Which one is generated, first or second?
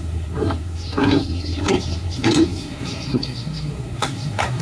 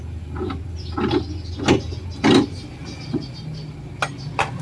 first